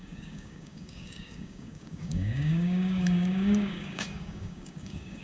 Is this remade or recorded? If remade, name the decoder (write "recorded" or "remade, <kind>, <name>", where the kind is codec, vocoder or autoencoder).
remade, codec, DAC